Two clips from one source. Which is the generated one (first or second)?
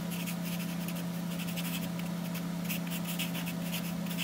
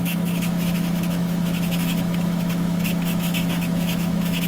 second